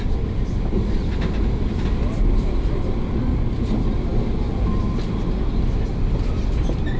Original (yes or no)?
yes